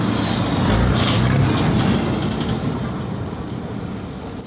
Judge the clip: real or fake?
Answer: real